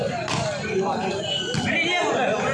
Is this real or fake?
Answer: real